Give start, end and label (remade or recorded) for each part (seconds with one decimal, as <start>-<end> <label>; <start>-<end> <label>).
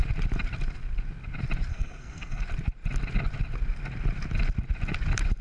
0.0-1.7 recorded; 1.7-2.4 remade; 2.4-5.4 recorded